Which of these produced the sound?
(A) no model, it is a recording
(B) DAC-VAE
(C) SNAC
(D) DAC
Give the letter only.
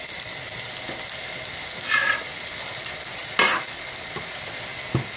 A